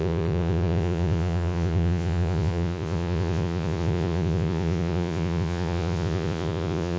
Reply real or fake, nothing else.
fake